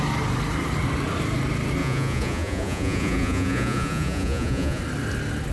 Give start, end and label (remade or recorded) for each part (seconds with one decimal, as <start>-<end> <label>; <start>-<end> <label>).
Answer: 0.0-1.8 recorded; 1.8-4.8 remade; 4.8-5.5 recorded

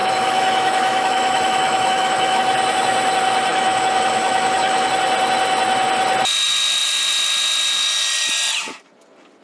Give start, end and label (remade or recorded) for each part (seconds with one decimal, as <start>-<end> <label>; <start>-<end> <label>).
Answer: 0.0-2.4 remade; 2.4-3.5 recorded; 3.5-4.9 remade; 4.9-9.4 recorded

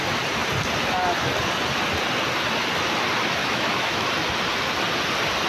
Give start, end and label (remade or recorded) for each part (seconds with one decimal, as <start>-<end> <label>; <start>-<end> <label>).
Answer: 0.0-3.4 recorded; 3.4-4.1 remade; 4.1-5.5 recorded

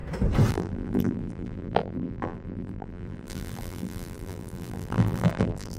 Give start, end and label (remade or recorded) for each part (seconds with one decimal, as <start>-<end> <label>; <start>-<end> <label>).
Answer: 0.0-0.5 recorded; 0.5-5.8 remade

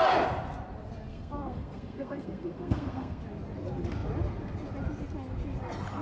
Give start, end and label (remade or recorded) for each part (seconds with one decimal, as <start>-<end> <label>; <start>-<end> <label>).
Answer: 0.0-1.1 recorded; 1.1-3.2 remade; 3.2-6.0 recorded

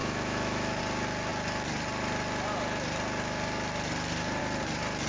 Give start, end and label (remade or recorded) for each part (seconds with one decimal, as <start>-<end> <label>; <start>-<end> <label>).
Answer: 0.0-0.8 remade; 0.8-5.1 recorded

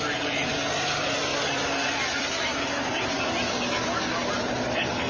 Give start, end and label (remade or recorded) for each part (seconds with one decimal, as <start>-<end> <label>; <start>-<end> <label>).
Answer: 0.0-5.1 recorded

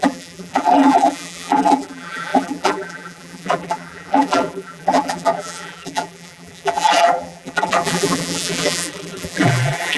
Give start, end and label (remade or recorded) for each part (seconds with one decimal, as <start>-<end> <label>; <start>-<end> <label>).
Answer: 0.0-10.0 remade